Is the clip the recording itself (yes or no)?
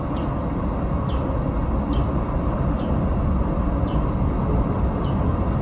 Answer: yes